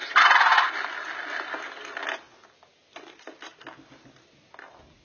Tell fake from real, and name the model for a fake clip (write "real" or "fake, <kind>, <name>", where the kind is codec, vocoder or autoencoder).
real